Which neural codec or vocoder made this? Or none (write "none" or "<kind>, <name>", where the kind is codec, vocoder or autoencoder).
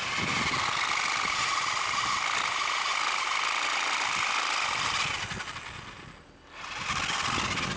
none